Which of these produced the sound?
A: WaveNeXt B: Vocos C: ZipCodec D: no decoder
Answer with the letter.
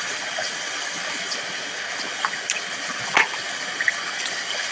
D